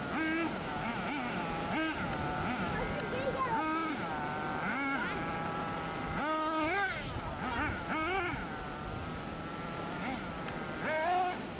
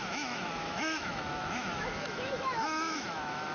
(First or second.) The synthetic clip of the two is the second